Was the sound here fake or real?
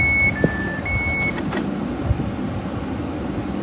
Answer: real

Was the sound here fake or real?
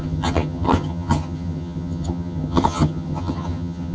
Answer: fake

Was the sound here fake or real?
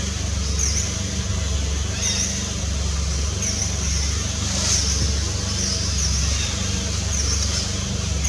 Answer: real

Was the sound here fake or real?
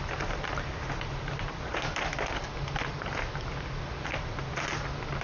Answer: real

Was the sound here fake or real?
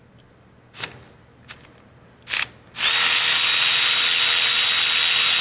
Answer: real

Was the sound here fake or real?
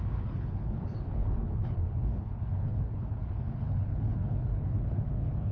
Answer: fake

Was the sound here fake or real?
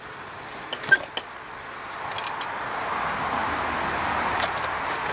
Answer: real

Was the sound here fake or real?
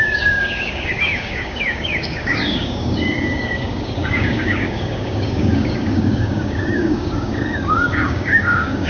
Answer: fake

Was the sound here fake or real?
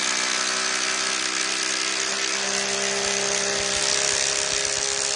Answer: real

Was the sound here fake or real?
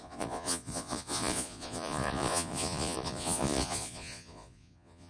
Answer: fake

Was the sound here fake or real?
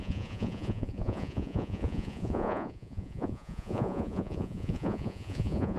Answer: fake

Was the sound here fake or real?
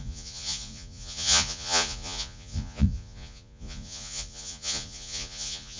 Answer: fake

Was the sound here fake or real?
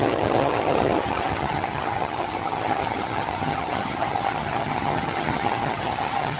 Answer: fake